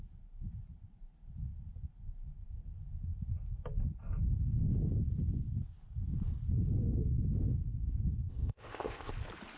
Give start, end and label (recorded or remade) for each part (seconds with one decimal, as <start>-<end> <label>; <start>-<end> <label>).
0.0-8.3 recorded; 8.3-9.1 remade; 9.1-9.6 recorded